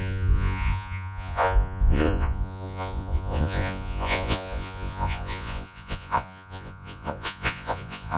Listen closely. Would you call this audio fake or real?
fake